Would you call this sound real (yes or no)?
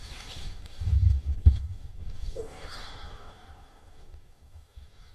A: no